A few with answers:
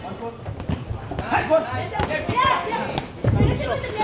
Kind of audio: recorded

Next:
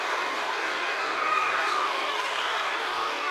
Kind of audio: remade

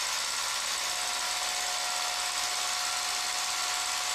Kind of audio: recorded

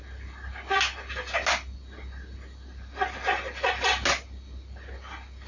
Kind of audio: recorded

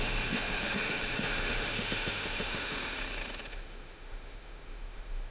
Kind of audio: remade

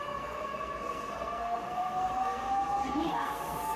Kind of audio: remade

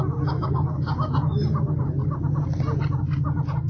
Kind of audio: recorded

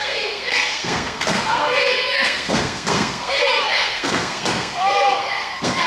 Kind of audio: remade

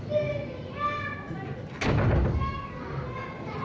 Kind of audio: recorded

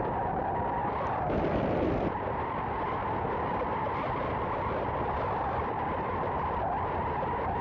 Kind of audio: recorded